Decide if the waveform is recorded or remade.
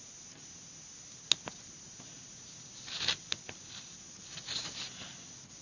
recorded